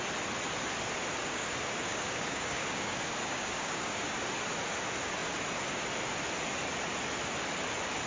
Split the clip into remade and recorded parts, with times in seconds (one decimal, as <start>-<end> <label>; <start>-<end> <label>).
0.0-1.2 recorded; 1.2-4.3 remade; 4.3-8.1 recorded